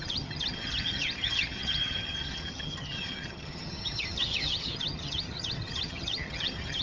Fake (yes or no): yes